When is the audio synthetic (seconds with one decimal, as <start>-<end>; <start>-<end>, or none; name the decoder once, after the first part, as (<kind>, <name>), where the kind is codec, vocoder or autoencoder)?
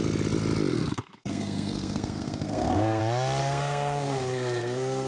0.7-3.0 (codec, SNAC); 3.4-5.1